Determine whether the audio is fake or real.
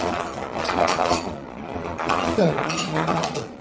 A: fake